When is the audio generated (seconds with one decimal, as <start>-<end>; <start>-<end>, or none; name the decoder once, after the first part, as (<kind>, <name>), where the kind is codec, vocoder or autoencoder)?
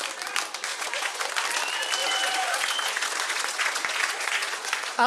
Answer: 0.7-1.3 (vocoder, Vocos); 2.0-5.1